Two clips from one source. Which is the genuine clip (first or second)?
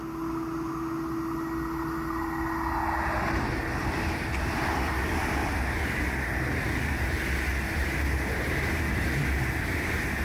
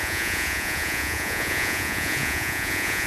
first